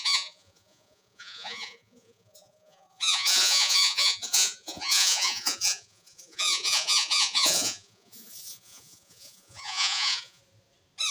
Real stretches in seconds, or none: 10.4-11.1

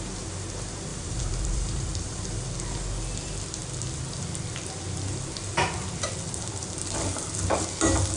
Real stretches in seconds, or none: 0.0-0.9; 2.1-8.2

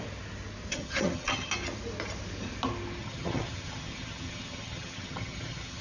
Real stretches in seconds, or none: 0.0-0.7; 1.5-3.0

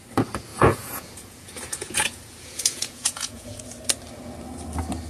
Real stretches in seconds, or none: 0.0-0.5; 3.6-5.1